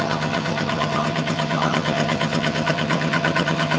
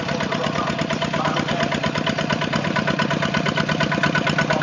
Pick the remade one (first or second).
first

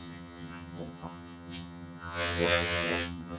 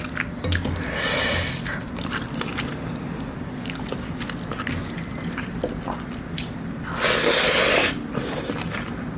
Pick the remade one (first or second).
first